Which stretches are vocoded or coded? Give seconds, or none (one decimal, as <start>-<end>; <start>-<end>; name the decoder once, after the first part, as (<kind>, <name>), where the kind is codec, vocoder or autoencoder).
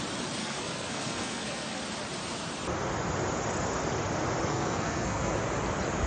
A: 0.4-1.8 (codec, SNAC); 4.5-5.4